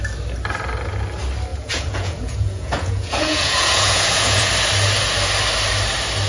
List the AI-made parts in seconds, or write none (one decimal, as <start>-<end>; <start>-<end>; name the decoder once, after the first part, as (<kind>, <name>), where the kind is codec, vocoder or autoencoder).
1.5-4.5 (vocoder, Vocos)